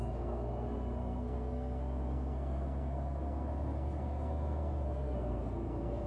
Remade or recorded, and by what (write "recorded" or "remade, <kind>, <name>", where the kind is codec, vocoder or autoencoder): remade, codec, SNAC